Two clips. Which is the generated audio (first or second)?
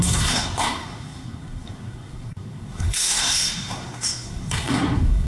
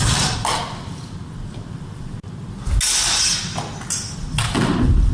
first